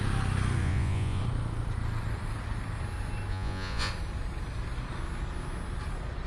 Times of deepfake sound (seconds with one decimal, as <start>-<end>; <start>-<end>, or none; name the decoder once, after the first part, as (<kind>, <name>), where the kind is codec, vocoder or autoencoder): 0.6-1.2 (vocoder, Vocos); 3.3-3.9